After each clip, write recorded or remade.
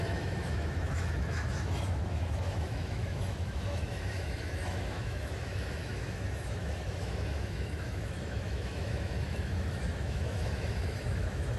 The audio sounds remade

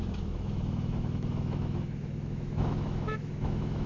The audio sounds remade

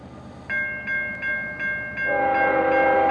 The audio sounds recorded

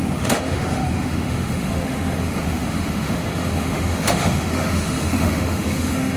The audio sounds remade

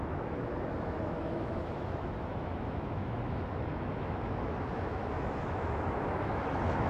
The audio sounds remade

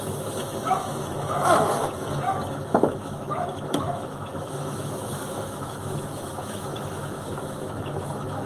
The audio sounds remade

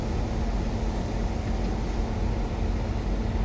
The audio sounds recorded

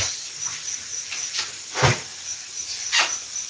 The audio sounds recorded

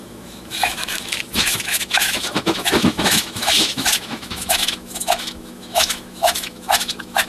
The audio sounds remade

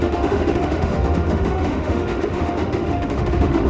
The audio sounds remade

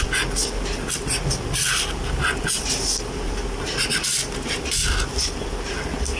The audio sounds recorded